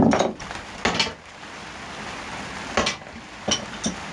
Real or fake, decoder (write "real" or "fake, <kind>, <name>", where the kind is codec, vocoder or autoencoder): real